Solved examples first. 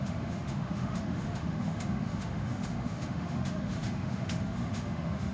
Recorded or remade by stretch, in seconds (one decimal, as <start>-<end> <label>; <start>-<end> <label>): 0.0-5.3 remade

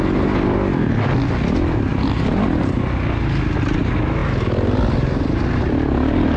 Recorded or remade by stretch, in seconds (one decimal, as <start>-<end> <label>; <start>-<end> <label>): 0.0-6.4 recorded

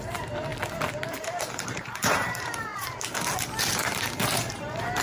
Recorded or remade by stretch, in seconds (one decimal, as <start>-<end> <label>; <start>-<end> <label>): 0.0-0.5 remade; 0.5-1.2 recorded; 1.2-2.7 remade; 2.7-3.7 recorded; 3.7-5.0 remade